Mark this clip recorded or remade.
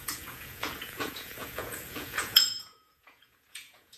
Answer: remade